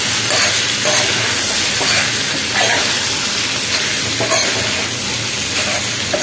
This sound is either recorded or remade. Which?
recorded